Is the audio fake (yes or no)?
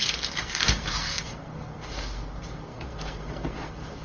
yes